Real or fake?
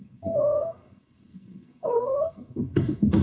fake